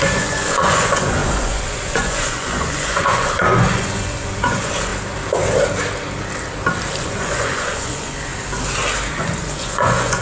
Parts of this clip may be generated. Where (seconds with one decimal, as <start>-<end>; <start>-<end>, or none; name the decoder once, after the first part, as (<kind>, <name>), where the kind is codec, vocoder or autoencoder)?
0.0-4.9 (vocoder, Vocos); 7.0-8.3; 9.1-10.2